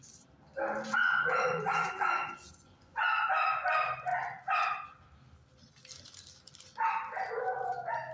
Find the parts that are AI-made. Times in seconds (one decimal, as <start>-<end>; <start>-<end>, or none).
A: 0.9-3.3